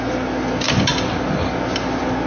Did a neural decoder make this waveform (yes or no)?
no